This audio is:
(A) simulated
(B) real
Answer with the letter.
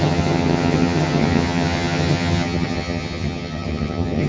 A